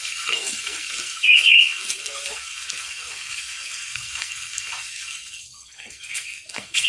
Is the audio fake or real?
fake